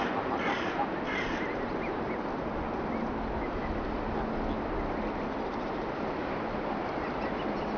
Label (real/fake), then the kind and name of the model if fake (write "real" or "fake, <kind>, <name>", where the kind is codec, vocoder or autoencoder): real